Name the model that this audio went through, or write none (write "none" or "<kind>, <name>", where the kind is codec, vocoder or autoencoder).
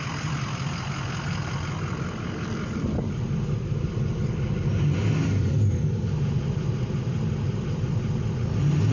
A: none